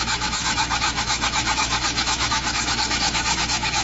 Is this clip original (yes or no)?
no